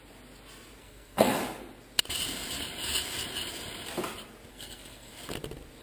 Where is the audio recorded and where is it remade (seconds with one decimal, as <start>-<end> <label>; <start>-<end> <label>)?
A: 0.0-0.8 recorded; 0.8-1.4 remade; 1.4-4.5 recorded; 4.5-5.1 remade; 5.1-5.8 recorded